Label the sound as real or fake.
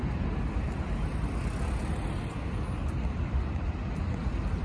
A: real